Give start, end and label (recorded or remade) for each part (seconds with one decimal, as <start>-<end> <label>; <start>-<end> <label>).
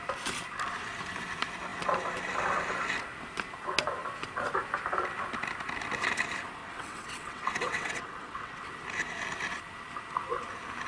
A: 0.0-6.6 recorded; 6.6-8.7 remade; 8.7-10.9 recorded